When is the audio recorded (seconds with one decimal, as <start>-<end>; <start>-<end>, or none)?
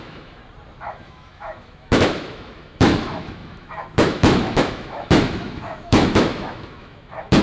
0.4-0.9